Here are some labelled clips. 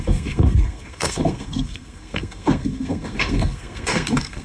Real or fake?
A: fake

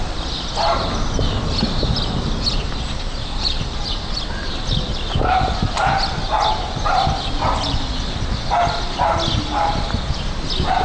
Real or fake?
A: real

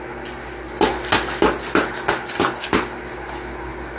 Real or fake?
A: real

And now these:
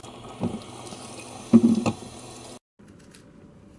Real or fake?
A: real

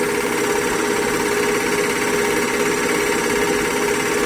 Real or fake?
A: real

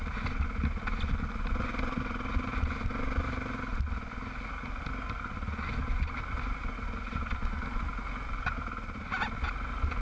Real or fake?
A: real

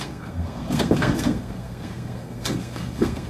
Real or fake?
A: fake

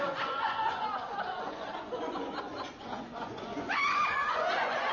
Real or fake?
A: fake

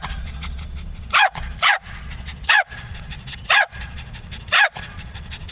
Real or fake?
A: fake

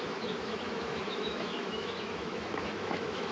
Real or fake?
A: fake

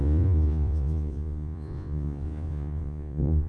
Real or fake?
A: fake